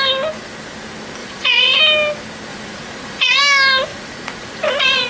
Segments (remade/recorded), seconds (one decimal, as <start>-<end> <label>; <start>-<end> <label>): 0.0-1.2 recorded; 1.2-1.8 remade; 1.8-2.5 recorded; 2.5-3.4 remade; 3.4-3.9 recorded; 3.9-5.1 remade